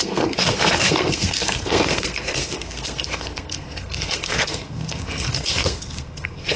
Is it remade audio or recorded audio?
remade